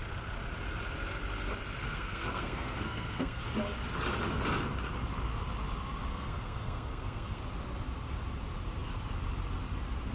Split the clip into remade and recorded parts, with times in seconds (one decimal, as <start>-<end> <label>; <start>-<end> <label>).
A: 0.0-1.8 recorded; 1.8-3.4 remade; 3.4-6.1 recorded; 6.1-7.4 remade; 7.4-10.1 recorded